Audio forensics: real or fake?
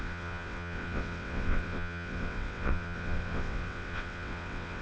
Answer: fake